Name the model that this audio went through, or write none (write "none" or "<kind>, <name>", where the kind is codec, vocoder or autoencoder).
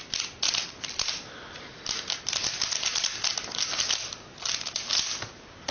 none